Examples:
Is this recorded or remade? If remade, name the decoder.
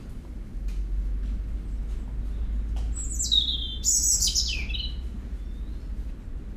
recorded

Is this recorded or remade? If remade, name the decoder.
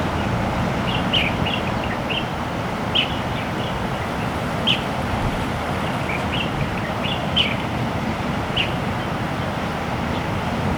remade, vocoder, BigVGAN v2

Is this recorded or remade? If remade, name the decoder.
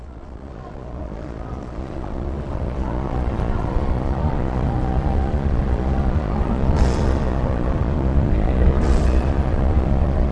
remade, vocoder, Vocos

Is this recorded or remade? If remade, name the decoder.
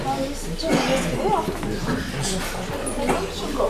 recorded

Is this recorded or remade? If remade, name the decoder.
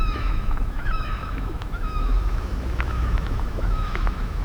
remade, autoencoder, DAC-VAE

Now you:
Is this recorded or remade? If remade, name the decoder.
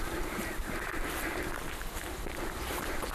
remade, vocoder, BigVGAN v2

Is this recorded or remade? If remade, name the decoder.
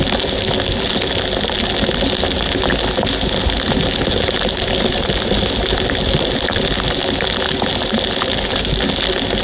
recorded